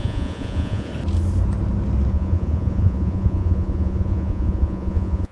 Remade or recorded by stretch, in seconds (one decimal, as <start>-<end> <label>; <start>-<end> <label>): 0.0-0.9 remade; 0.9-2.1 recorded; 2.1-5.3 remade